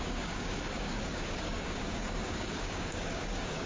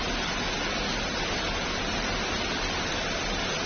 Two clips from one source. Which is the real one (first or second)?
second